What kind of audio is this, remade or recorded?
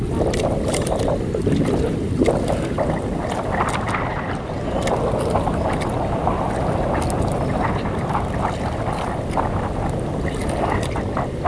recorded